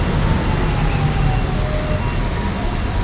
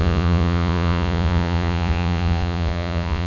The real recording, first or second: first